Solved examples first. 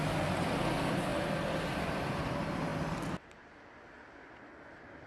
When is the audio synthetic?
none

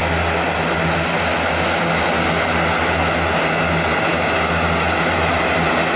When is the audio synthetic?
none

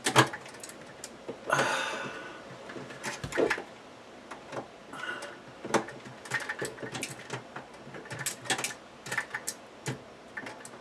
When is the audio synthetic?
none

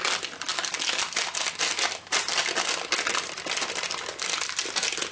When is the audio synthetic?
none

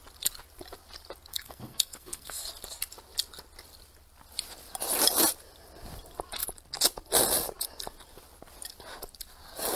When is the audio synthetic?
1.3-2.4 (codec, SNAC)